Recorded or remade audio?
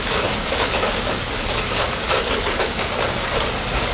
remade